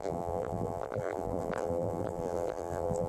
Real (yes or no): no